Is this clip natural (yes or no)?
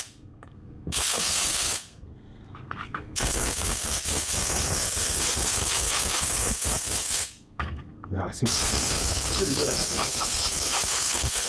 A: no